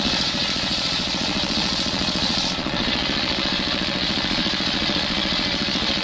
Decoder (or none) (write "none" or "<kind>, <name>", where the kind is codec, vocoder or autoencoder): vocoder, Vocos